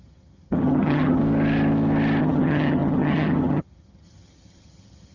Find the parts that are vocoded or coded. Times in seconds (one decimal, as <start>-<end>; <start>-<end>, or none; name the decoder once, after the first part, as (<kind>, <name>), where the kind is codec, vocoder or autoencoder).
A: 0.0-1.2 (vocoder, HiFi-GAN); 2.2-5.1